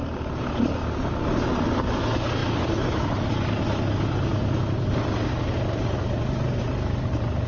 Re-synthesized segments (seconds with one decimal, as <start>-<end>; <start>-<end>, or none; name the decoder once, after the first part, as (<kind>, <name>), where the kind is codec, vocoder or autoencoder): none